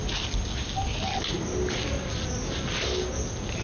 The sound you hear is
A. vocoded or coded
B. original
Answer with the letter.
B